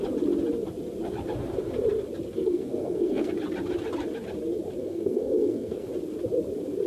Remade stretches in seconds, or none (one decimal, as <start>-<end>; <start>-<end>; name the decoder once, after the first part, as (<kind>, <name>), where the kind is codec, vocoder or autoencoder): 2.4-3.3 (codec, SNAC); 4.8-5.9